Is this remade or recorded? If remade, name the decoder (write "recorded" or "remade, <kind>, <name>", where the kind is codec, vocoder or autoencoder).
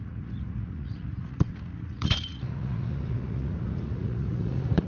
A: remade, vocoder, Vocos